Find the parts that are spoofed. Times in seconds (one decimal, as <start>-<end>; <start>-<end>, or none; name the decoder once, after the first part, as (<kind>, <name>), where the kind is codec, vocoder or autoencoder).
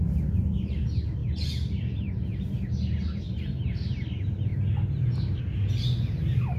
none